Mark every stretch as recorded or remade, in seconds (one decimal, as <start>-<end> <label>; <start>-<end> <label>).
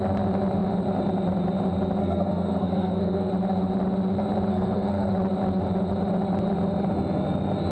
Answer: 0.0-2.0 recorded; 2.0-3.3 remade; 3.3-4.5 recorded; 4.5-5.1 remade; 5.1-7.7 recorded